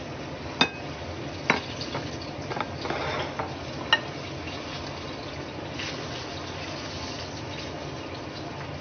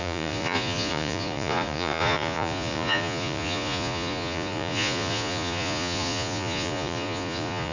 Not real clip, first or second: second